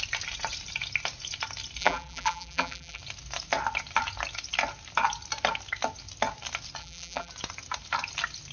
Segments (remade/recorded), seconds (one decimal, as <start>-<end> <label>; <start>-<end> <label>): 0.0-1.8 recorded; 1.8-3.0 remade; 3.0-6.8 recorded; 6.8-7.3 remade; 7.3-8.5 recorded